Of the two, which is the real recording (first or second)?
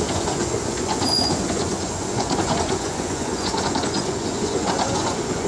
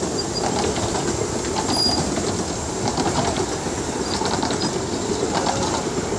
second